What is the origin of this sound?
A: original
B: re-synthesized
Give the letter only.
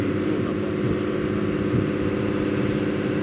A